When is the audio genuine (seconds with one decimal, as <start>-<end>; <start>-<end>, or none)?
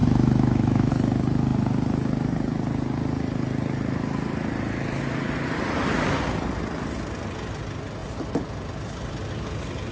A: 0.9-9.9